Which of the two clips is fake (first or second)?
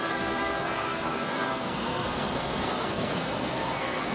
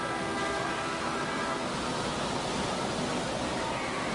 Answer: first